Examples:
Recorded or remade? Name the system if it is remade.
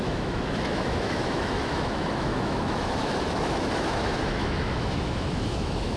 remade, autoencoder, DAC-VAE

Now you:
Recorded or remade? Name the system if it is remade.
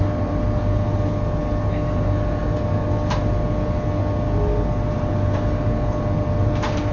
recorded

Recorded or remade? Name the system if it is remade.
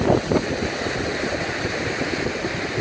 recorded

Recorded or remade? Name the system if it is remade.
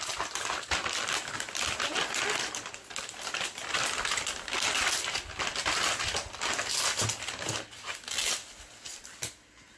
recorded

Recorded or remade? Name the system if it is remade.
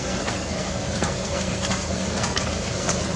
remade, codec, SNAC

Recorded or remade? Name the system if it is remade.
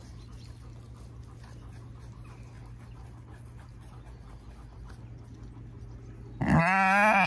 recorded